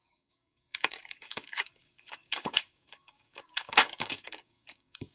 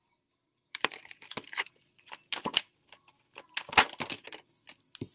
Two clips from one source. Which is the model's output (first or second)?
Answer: first